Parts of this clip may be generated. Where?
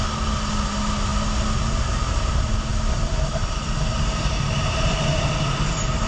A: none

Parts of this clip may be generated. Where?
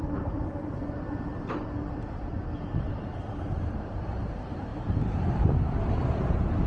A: 0.0-6.7 (vocoder, BigVGAN v2)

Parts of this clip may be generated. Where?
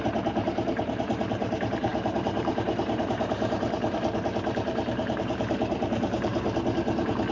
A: 0.0-6.3 (vocoder, BigVGAN v2)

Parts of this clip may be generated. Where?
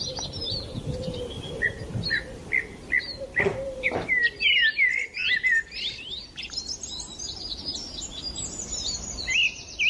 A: none